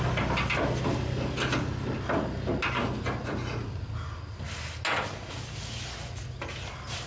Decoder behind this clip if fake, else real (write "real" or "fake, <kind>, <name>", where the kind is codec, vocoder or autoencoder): real